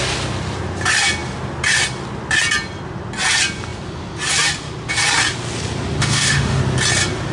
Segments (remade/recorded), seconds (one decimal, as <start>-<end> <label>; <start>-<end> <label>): 0.0-6.0 recorded; 6.0-6.6 remade; 6.6-7.3 recorded